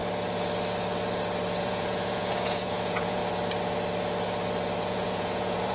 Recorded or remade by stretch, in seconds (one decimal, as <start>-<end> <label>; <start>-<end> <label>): 0.0-1.6 recorded; 1.6-3.2 remade; 3.2-4.8 recorded; 4.8-5.7 remade